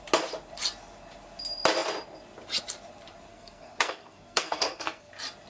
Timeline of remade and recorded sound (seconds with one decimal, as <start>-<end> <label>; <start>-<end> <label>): 0.0-3.3 recorded; 3.3-5.1 remade; 5.1-5.5 recorded